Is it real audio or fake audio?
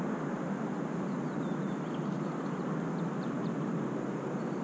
real